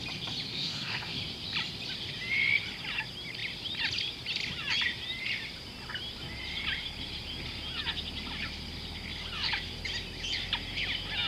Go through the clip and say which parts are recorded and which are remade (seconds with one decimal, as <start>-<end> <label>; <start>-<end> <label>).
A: 0.0-0.5 recorded; 0.5-1.2 remade; 1.2-11.3 recorded

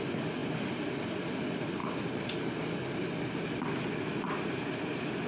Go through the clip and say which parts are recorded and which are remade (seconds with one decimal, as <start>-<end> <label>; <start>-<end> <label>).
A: 0.0-5.3 recorded

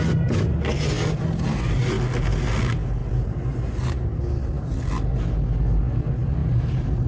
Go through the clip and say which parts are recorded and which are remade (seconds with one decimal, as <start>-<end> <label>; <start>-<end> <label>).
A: 0.0-3.0 recorded; 3.0-4.2 remade; 4.2-6.4 recorded; 6.4-7.1 remade

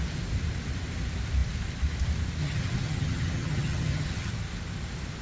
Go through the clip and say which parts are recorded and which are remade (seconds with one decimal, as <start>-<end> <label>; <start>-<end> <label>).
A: 0.0-2.4 recorded; 2.4-4.3 remade; 4.3-5.2 recorded